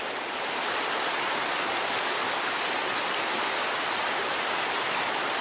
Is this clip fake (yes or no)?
no